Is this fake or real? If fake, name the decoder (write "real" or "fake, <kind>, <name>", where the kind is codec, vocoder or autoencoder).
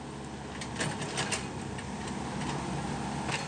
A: real